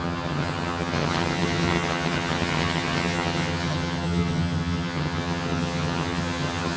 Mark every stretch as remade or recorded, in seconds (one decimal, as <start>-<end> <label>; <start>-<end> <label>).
0.0-6.8 remade

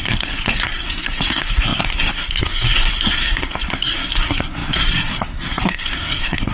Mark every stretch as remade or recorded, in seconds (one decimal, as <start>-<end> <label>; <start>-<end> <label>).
0.0-6.5 remade